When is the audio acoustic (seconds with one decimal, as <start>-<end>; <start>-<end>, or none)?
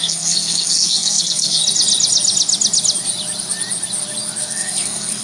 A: 1.6-4.4